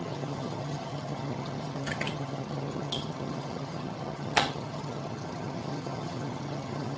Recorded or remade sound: remade